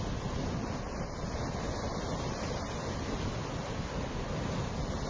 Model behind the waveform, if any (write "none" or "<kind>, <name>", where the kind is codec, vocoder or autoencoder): none